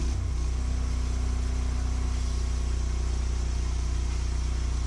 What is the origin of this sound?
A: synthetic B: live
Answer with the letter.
B